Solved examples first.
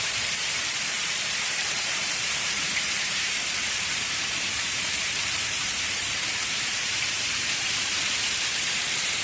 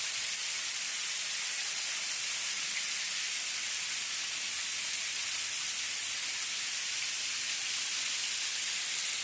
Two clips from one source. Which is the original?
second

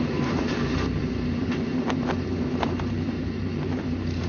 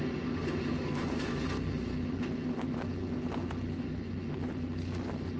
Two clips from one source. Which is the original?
second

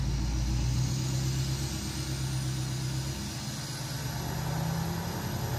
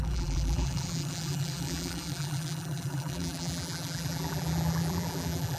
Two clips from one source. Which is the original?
first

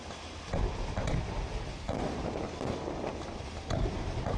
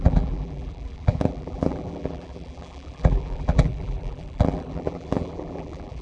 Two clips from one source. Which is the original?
first